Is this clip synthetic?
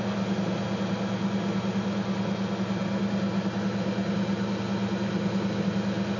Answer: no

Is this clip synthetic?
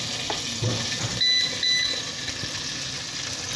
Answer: no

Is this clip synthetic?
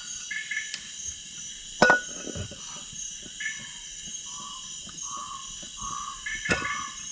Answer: no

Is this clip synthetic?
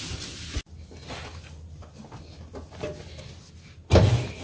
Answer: no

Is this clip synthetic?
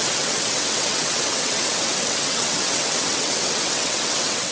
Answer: yes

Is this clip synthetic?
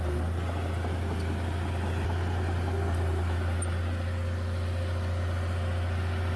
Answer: no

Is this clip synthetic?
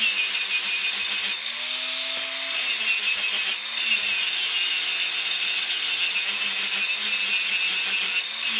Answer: no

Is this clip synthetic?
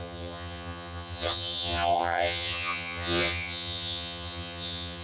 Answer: yes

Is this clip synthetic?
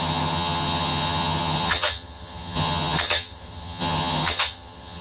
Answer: yes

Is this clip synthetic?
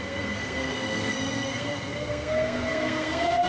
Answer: yes